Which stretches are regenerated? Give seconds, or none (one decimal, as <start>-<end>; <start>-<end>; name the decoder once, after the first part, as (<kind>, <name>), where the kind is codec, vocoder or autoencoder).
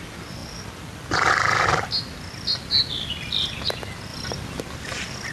none